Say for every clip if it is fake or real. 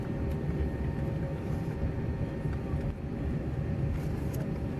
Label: real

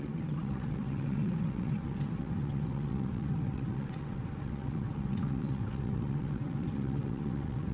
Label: fake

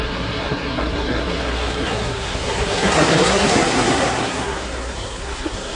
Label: fake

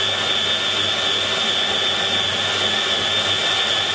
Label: real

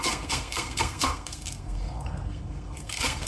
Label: fake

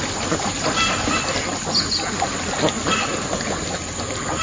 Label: real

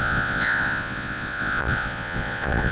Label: fake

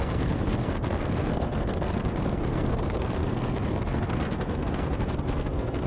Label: fake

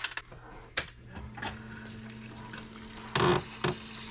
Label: real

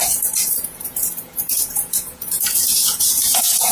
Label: fake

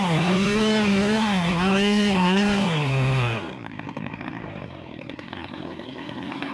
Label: fake